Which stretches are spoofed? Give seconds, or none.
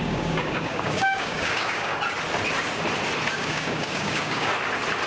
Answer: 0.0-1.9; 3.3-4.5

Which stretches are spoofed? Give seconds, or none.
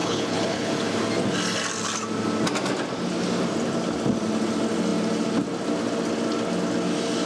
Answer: 0.0-0.7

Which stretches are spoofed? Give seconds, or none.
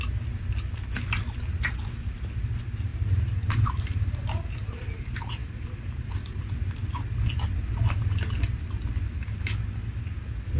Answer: 2.9-6.4